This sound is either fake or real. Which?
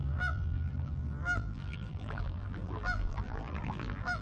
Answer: fake